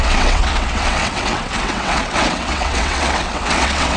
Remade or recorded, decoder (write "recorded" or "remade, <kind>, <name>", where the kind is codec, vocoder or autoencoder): remade, vocoder, WaveNeXt